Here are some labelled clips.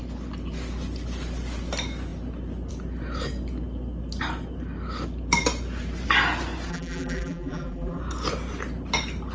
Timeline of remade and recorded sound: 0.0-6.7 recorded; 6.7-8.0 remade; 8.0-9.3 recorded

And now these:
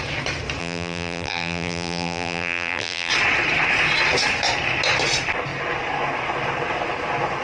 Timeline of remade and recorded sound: 0.0-0.6 recorded; 0.6-3.1 remade; 3.1-7.4 recorded

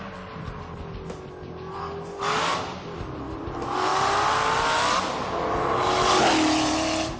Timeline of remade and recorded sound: 0.0-7.2 recorded

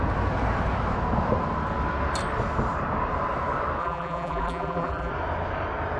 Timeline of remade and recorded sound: 0.0-3.8 recorded; 3.8-5.1 remade; 5.1-6.0 recorded

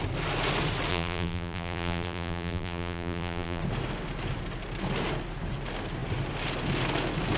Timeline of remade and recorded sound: 0.0-0.9 recorded; 0.9-3.6 remade; 3.6-7.4 recorded

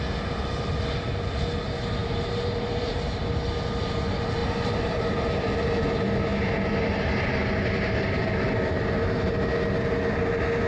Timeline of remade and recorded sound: 0.0-2.0 recorded; 2.0-3.1 remade; 3.1-4.4 recorded; 4.4-5.3 remade; 5.3-10.7 recorded

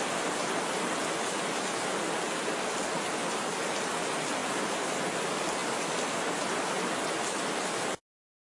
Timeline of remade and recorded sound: 0.0-4.4 recorded; 4.4-5.0 remade; 5.0-5.6 recorded; 5.6-6.8 remade; 6.8-8.4 recorded